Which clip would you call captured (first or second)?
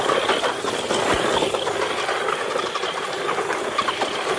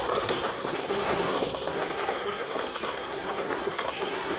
first